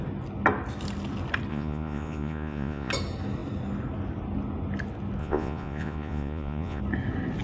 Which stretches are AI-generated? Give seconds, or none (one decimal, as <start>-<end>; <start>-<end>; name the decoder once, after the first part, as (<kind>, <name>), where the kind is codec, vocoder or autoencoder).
1.5-2.9 (vocoder, Vocos); 5.2-6.8